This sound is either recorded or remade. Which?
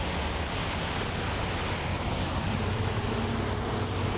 recorded